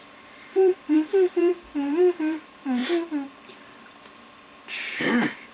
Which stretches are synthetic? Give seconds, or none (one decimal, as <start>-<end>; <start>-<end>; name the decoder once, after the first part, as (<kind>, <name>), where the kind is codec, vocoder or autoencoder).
0.0-2.8 (vocoder, BigVGAN v2)